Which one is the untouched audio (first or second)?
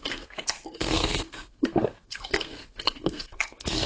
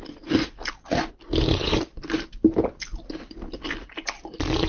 second